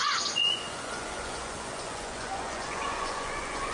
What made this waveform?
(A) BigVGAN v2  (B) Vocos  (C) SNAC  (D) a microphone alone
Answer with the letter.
B